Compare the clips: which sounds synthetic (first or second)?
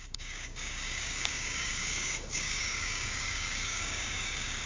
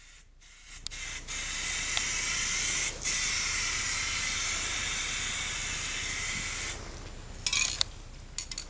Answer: first